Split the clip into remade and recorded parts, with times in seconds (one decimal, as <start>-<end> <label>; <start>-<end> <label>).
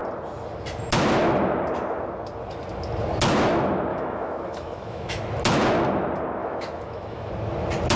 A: 0.0-3.9 recorded; 3.9-5.2 remade; 5.2-6.4 recorded; 6.4-7.3 remade; 7.3-8.0 recorded